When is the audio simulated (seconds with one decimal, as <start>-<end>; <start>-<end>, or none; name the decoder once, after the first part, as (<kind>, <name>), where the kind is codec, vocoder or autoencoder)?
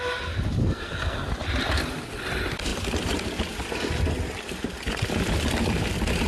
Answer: 0.6-1.3 (codec, SNAC)